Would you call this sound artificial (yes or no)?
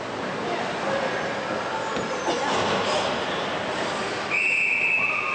no